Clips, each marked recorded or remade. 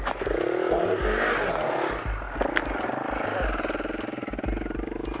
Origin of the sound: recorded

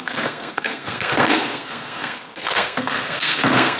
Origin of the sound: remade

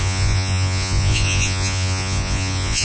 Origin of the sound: remade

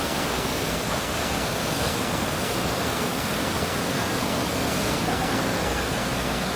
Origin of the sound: remade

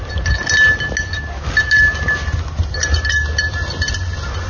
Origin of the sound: recorded